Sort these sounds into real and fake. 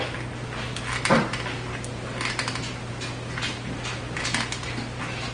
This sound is real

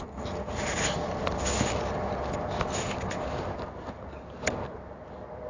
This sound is real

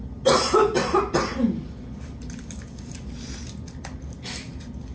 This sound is real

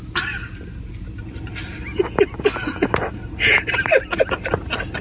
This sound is real